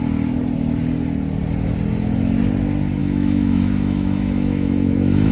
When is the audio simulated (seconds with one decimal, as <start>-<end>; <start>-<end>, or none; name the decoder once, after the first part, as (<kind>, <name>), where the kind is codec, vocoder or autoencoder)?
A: 3.0-5.3 (autoencoder, DAC-VAE)